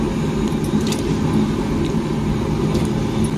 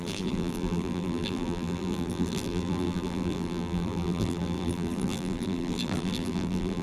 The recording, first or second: first